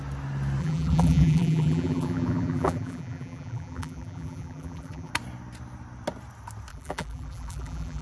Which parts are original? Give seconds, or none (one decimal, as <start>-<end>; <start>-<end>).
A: 0.0-0.6; 5.1-6.7

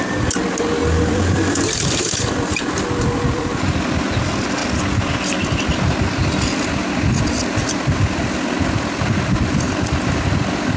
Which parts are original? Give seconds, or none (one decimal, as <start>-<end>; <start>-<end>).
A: 0.0-0.8; 3.5-10.8